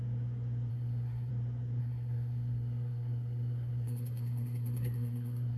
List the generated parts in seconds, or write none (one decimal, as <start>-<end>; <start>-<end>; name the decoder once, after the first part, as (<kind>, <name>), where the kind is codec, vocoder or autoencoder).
0.7-1.3 (codec, SNAC); 1.8-5.6